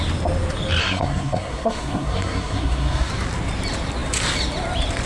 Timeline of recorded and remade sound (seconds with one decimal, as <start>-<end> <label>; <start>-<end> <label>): 0.0-0.8 recorded; 0.8-3.1 remade; 3.1-5.1 recorded